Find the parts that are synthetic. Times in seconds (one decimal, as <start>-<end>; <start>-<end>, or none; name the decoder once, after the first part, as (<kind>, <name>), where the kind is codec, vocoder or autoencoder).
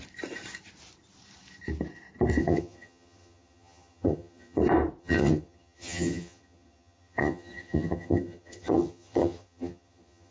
2.4-4.6 (vocoder, HiFi-GAN); 5.0-10.3